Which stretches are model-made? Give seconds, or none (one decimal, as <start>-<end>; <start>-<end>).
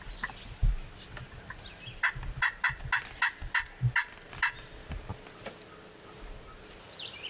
none